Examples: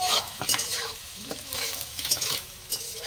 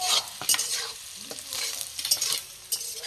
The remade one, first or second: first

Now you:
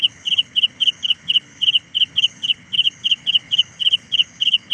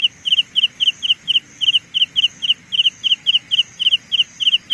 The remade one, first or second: first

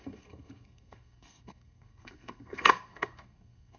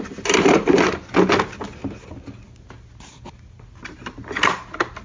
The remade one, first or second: first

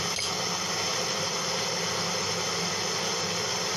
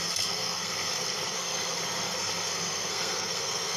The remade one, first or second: second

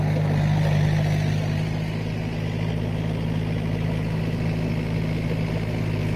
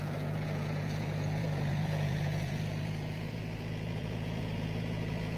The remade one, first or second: second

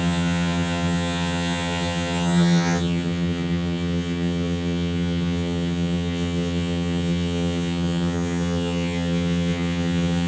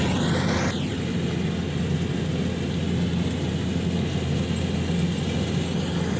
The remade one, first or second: first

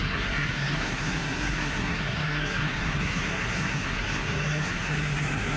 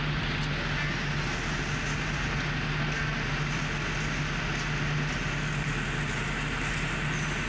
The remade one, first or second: first